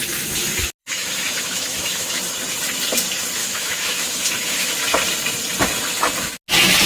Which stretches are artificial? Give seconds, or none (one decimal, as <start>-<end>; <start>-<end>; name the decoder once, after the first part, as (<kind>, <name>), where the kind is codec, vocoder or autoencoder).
0.8-2.2 (autoencoder, DAC-VAE); 3.4-4.7